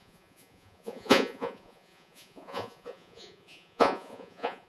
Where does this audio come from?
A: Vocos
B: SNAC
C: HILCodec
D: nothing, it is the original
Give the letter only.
A